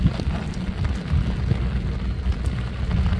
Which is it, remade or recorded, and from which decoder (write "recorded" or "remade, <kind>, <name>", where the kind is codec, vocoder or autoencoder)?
recorded